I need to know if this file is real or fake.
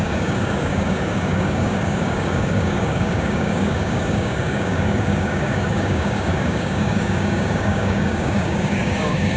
fake